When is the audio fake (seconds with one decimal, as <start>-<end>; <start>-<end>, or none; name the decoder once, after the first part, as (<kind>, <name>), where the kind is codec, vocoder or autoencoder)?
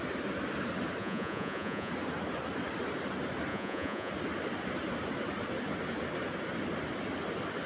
1.0-1.9 (vocoder, Vocos); 3.5-4.1